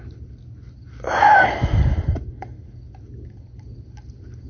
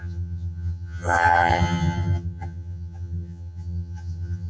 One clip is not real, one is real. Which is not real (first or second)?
second